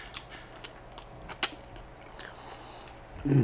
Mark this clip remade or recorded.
recorded